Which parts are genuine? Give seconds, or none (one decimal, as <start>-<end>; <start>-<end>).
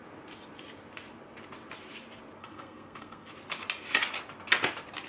0.0-2.4; 3.3-5.1